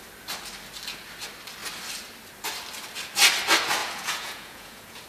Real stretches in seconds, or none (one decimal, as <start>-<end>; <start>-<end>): 0.0-3.8